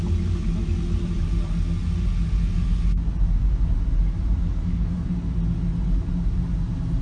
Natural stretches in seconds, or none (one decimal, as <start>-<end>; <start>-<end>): 0.0-4.4; 5.1-7.0